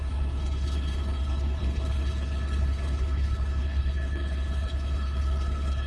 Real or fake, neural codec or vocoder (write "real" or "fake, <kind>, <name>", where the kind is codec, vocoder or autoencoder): fake, codec, HILCodec